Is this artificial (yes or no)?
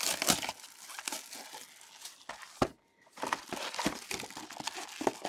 no